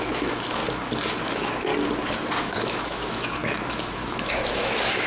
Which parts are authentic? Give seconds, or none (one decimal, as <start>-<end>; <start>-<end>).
0.6-1.2; 1.7-2.4